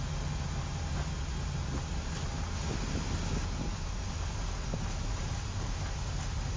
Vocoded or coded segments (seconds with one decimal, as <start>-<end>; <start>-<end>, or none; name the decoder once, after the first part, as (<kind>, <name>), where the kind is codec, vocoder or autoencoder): none